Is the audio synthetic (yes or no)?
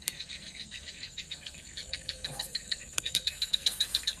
yes